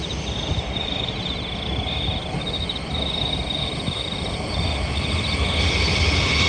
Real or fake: real